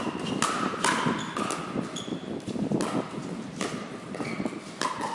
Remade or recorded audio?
recorded